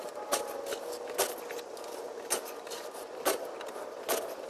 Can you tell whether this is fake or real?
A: real